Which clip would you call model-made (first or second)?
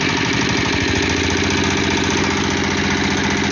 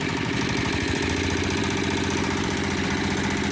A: second